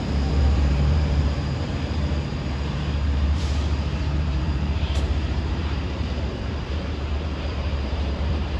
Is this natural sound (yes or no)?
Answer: no